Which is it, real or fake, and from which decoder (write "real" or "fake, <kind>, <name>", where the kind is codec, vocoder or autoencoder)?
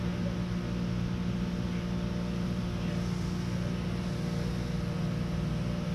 real